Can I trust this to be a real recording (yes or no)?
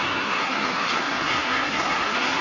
no